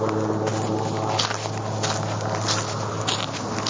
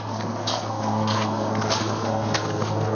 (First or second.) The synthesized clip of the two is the second